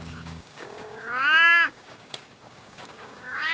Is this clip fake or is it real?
fake